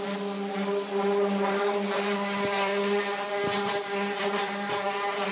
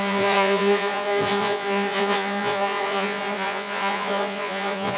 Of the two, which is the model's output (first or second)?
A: second